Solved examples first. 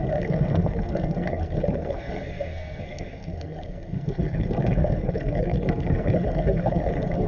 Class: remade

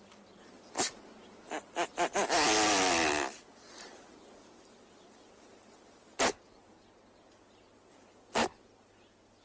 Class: recorded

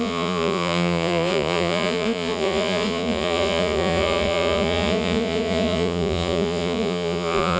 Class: remade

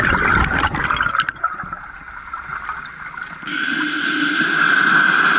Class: recorded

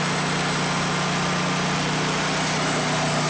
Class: recorded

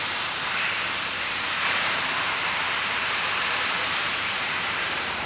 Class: remade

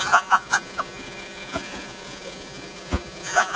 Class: remade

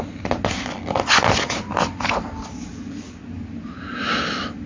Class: recorded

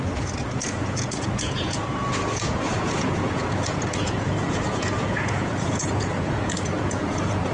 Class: remade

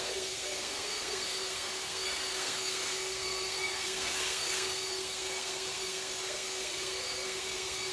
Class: remade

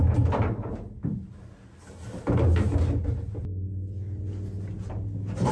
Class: recorded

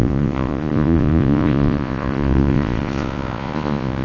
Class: remade